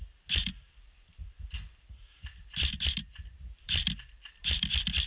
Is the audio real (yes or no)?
no